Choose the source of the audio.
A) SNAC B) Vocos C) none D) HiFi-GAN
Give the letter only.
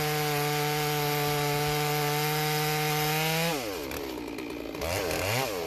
C